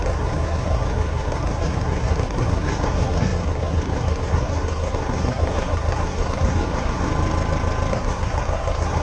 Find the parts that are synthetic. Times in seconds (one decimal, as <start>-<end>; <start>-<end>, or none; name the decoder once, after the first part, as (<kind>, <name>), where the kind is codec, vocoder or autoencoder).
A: 0.0-7.1 (codec, SNAC); 7.9-9.0